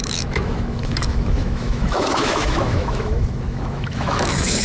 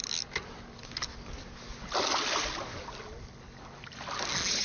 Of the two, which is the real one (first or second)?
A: second